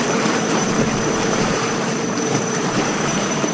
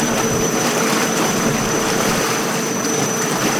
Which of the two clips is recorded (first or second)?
second